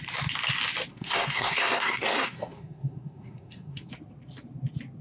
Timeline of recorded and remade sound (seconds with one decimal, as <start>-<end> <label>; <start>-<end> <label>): 0.0-0.9 recorded; 0.9-3.9 remade; 3.9-5.0 recorded